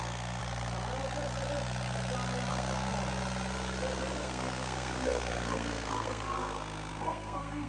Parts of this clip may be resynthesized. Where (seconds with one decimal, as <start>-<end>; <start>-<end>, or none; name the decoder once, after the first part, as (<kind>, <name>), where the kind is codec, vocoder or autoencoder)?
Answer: 0.0-0.4 (codec, SNAC); 2.5-2.9; 4.2-7.7